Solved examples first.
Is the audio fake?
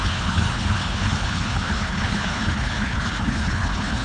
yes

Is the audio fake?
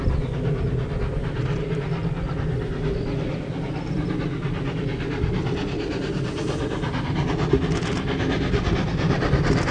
no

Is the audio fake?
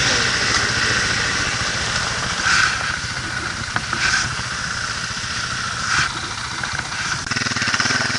no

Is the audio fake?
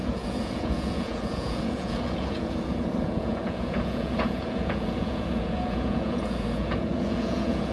yes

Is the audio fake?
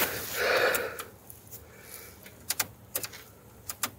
no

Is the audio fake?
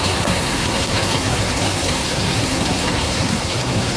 yes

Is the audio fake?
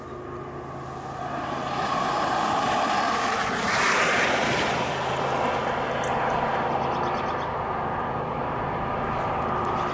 no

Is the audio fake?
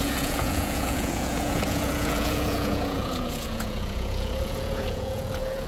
yes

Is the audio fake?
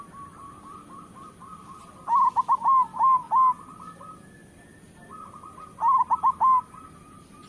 no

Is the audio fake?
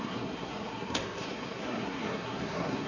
yes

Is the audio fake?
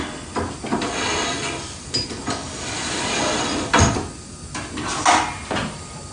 no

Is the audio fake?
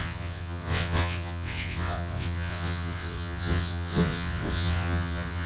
yes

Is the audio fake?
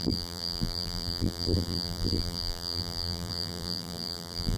yes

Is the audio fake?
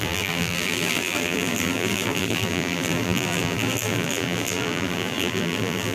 yes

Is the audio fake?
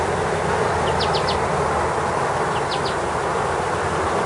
no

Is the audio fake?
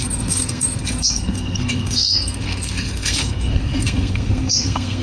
yes